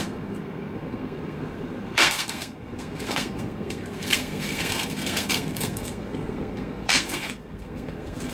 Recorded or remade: remade